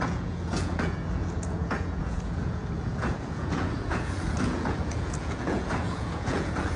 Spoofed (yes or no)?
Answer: yes